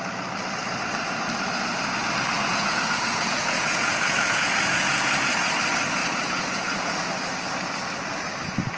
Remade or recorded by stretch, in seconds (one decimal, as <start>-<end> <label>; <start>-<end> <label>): 0.0-2.5 recorded; 2.5-5.3 remade; 5.3-6.0 recorded; 6.0-7.1 remade; 7.1-8.8 recorded